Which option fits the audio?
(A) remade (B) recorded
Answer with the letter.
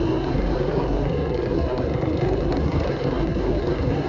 A